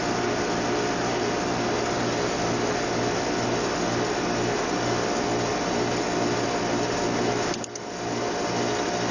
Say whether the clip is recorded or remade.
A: recorded